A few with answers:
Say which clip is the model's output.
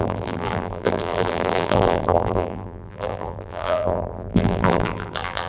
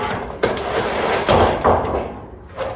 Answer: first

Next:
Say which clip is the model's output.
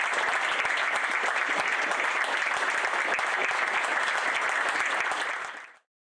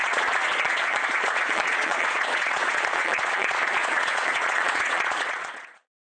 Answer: second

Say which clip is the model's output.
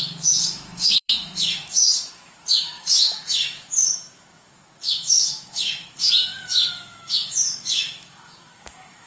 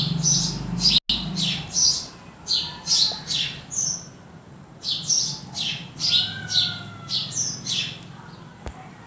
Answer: first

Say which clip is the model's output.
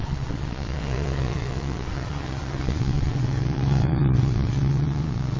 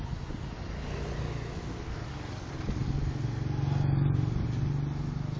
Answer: first